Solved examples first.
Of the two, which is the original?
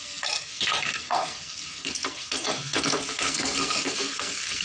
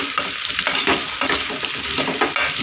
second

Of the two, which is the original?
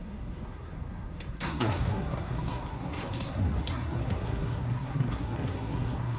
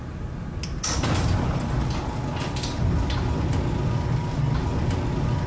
second